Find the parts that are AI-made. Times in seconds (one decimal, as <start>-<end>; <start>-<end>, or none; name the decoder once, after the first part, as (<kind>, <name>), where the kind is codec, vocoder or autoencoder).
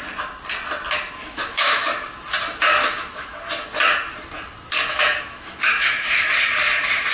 1.2-1.9 (autoencoder, DAC-VAE); 2.8-3.5; 4.9-6.3